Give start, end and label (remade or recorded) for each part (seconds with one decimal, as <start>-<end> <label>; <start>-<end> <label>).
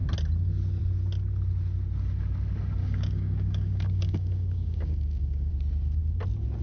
0.0-2.8 recorded; 2.8-5.5 remade; 5.5-6.6 recorded